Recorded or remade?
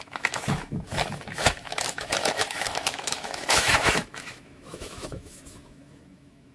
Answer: remade